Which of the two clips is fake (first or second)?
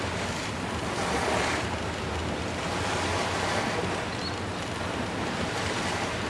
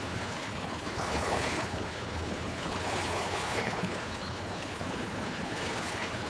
second